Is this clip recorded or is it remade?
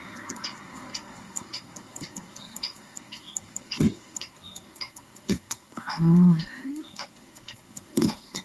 remade